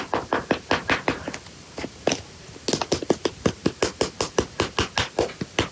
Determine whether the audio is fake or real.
real